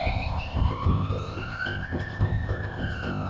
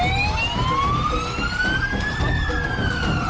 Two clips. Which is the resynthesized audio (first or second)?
first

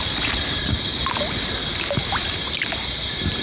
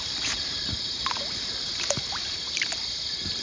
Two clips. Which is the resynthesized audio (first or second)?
second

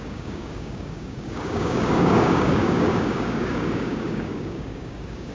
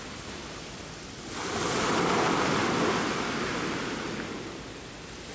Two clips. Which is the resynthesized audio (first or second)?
first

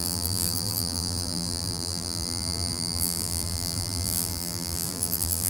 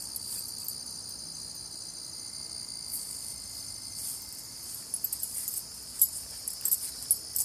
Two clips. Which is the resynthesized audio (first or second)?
first